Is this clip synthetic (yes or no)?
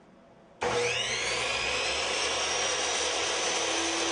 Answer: no